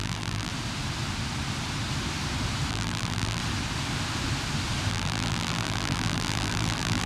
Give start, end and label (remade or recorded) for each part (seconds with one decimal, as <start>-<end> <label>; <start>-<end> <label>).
0.0-0.5 remade; 0.5-2.7 recorded; 2.7-3.4 remade; 3.4-4.9 recorded; 4.9-7.1 remade